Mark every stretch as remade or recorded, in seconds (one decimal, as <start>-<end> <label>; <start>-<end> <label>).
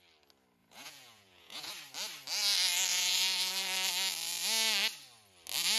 0.0-0.6 recorded; 0.6-1.7 remade; 1.7-2.9 recorded; 2.9-3.9 remade; 3.9-5.8 recorded